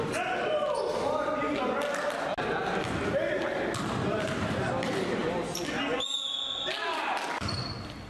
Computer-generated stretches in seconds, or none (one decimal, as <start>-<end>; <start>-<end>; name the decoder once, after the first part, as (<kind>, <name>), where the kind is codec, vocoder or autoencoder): none